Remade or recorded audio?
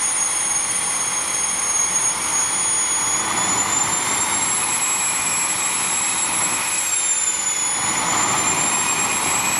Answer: remade